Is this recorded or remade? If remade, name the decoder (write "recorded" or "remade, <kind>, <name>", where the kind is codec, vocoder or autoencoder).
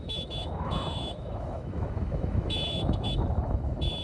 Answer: remade, autoencoder, DAC-VAE